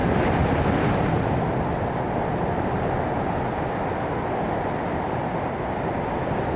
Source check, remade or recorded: recorded